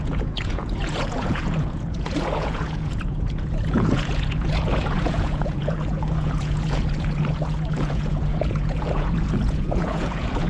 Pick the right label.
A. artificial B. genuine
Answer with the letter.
A